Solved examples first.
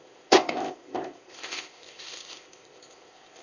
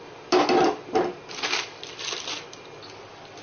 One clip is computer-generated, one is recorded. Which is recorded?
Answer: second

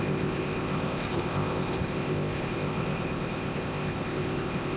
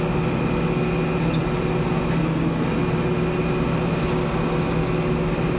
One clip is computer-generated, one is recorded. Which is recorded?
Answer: second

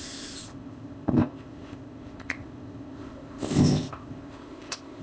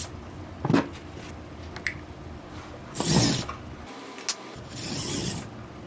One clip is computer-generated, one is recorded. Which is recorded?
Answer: second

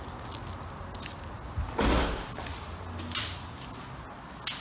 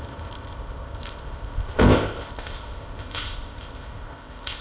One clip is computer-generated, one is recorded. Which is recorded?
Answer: first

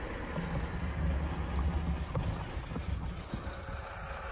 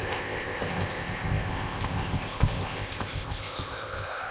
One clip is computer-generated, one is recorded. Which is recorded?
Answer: first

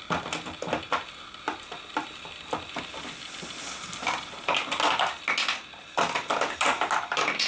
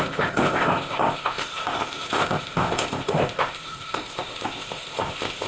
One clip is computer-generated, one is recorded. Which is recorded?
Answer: first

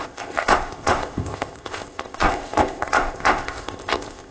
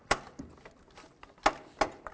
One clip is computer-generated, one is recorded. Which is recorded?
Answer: second